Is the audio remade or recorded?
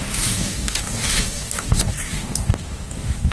remade